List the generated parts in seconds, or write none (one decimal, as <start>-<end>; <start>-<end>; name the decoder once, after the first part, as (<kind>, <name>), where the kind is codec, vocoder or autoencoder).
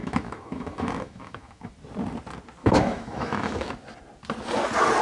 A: 0.0-1.7 (autoencoder, DAC-VAE); 2.6-3.7